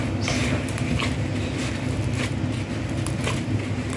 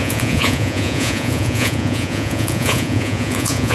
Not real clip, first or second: second